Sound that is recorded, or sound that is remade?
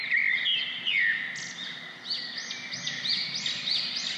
recorded